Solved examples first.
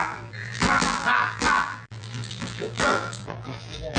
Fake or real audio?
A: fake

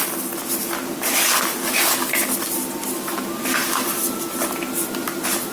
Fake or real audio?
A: real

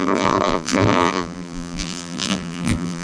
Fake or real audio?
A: fake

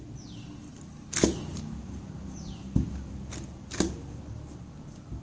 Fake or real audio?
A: real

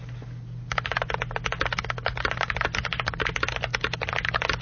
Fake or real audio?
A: real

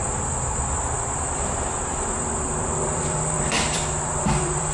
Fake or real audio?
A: fake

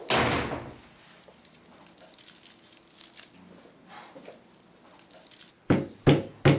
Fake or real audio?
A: real